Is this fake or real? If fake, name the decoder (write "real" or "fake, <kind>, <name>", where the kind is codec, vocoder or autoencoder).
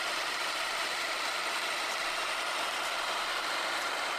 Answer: real